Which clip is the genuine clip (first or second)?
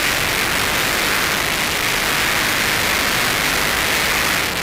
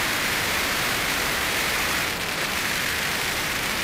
first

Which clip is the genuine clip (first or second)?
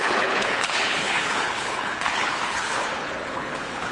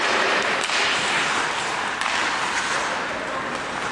second